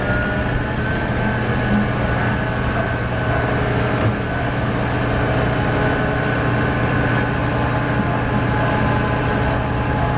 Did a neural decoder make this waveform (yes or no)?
no